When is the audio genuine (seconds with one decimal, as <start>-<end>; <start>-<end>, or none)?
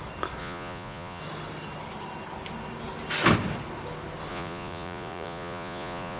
0.0-0.4; 1.2-4.3